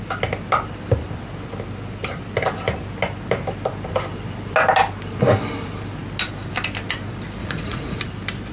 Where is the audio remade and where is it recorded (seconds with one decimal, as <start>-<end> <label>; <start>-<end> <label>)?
0.0-7.4 recorded; 7.4-8.0 remade; 8.0-8.5 recorded